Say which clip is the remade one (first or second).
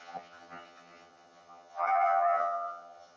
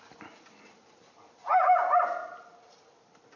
first